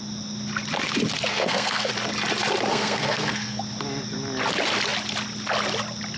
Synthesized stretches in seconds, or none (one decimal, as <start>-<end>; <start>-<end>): 1.3-1.9; 2.7-3.6